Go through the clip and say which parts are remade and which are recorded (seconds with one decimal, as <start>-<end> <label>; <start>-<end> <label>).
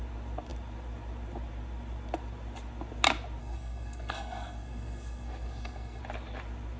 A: 0.0-3.4 recorded; 3.4-6.0 remade; 6.0-6.8 recorded